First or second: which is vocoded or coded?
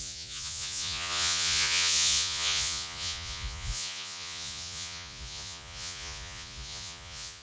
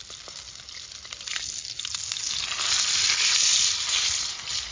first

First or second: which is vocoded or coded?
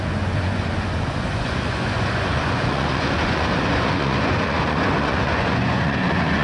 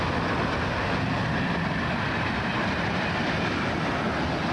first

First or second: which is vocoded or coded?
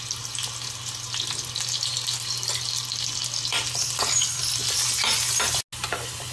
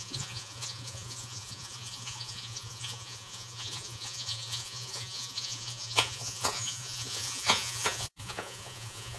second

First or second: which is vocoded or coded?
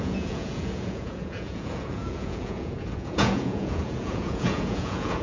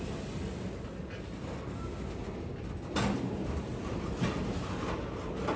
first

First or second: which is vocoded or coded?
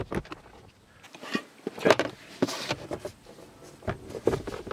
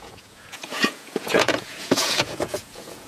second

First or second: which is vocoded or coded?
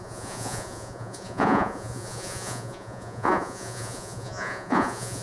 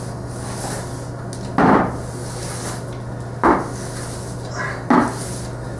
first